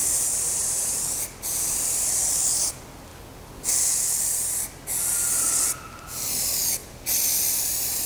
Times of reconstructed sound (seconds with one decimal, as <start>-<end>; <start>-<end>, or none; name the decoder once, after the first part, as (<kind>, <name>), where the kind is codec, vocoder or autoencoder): 0.0-1.0 (vocoder, BigVGAN v2)